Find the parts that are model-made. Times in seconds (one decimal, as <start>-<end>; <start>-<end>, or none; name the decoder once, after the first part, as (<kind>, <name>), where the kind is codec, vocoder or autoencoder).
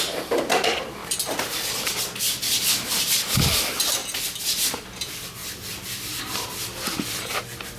0.0-1.0 (vocoder, BigVGAN v2); 3.4-4.0; 4.7-5.4; 6.2-7.8